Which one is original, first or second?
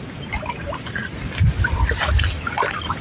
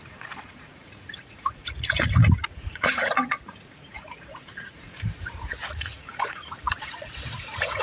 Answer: first